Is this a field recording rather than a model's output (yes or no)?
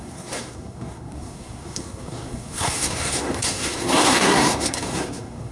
no